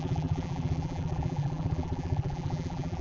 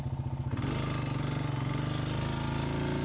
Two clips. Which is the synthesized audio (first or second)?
first